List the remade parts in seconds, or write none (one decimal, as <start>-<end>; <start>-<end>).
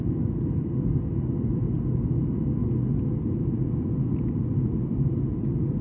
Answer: none